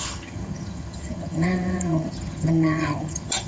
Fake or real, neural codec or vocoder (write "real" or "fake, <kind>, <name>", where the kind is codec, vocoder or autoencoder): fake, vocoder, HiFi-GAN